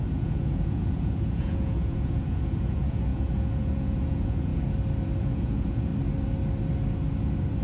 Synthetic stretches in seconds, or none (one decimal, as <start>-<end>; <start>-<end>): 0.0-4.5; 5.2-5.9